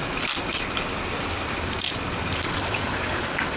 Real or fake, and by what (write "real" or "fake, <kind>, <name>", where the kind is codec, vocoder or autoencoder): real